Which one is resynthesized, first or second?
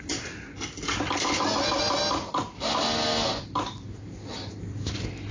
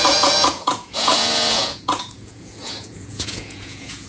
second